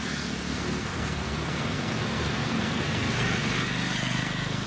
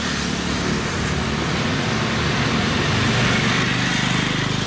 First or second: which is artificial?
first